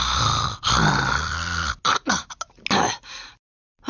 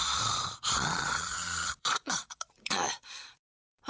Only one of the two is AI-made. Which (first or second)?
second